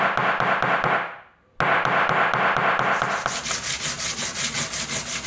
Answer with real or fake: real